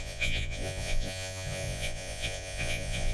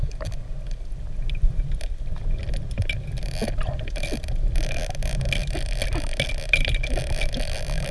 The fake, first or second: first